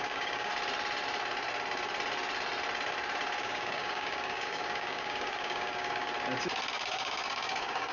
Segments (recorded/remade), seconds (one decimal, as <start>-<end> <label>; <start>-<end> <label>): 0.0-0.5 remade; 0.5-3.4 recorded; 3.4-6.1 remade; 6.1-6.7 recorded; 6.7-7.9 remade